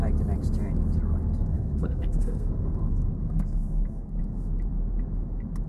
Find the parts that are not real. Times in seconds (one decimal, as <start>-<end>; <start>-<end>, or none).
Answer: 1.5-4.2